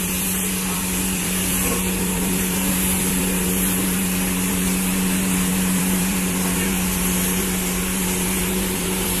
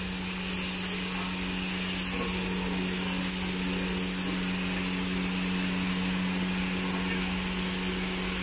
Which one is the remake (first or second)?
first